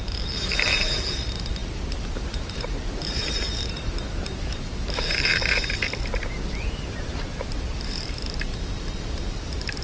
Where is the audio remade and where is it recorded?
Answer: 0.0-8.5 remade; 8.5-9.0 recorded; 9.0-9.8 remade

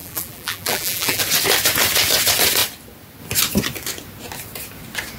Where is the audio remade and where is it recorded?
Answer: 0.0-1.2 remade; 1.2-5.2 recorded